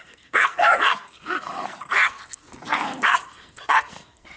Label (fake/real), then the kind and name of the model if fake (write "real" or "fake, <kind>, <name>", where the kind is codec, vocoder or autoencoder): fake, codec, SNAC